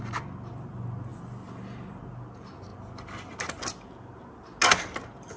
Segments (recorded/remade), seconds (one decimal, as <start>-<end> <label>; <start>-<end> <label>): 0.0-5.4 recorded